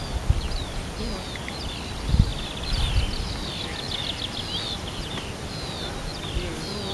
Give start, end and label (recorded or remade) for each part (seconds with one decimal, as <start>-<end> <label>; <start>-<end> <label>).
0.0-6.9 recorded